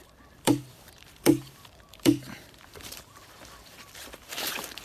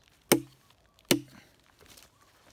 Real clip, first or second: second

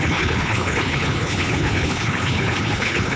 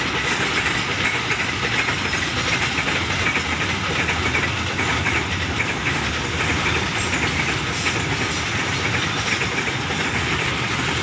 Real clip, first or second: second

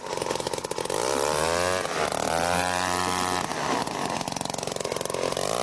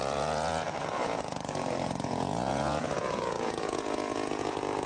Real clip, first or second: first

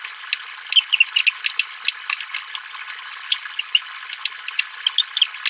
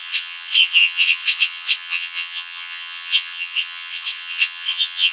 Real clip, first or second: first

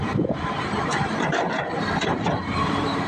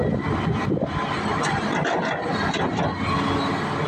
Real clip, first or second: second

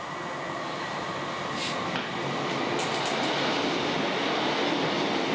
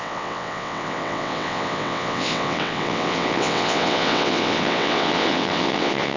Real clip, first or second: first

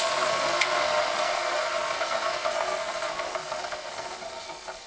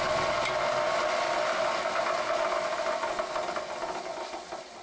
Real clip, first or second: second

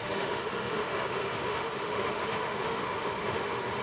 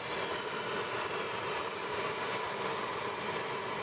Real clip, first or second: second